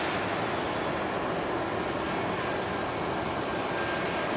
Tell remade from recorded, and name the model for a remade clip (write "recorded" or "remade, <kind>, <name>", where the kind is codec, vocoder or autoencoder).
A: recorded